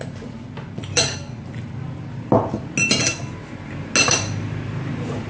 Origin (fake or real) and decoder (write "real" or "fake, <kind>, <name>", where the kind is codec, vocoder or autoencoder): real